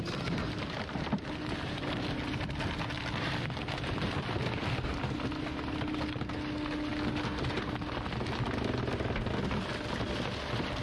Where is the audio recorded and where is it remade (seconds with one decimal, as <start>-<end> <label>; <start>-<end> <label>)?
0.0-10.8 recorded